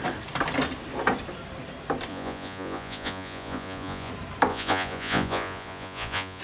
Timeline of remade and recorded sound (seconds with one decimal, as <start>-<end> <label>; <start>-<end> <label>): 0.0-2.1 recorded; 2.1-4.1 remade; 4.1-4.5 recorded; 4.5-6.4 remade